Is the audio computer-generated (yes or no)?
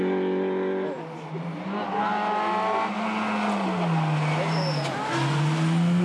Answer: no